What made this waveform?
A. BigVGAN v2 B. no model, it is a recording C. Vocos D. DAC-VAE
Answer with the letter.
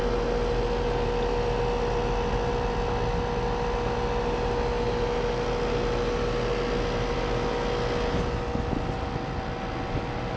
B